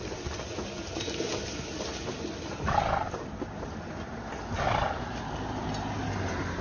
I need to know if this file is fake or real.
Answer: real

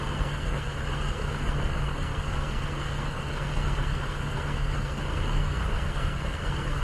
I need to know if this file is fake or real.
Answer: fake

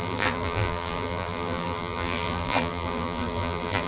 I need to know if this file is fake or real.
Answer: fake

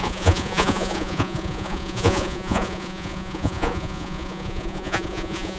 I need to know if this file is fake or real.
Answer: fake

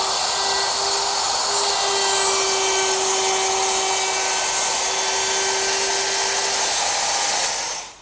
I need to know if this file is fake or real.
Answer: real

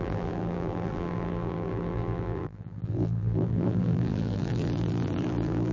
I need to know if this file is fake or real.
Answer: fake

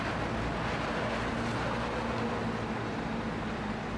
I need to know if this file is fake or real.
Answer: real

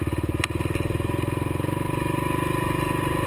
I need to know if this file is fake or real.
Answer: real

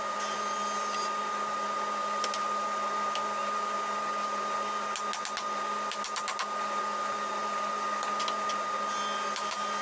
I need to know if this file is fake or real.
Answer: real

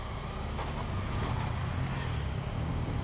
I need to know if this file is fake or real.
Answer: real